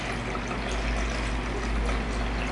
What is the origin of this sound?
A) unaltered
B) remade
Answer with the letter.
A